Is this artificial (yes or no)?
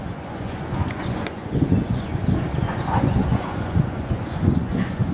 yes